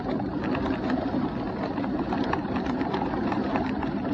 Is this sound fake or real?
fake